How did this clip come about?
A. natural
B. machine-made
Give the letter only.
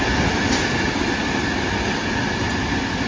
A